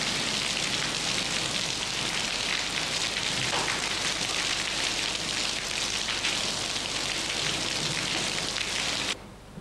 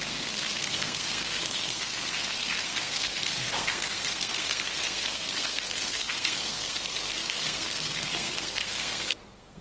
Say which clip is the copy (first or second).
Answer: second